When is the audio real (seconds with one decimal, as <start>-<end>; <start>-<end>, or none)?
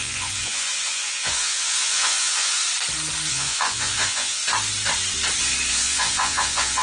2.6-3.3; 4.4-5.7